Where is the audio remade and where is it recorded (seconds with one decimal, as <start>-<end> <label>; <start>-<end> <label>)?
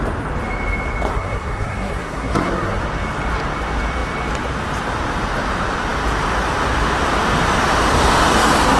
0.0-1.1 recorded; 1.1-2.8 remade; 2.8-8.8 recorded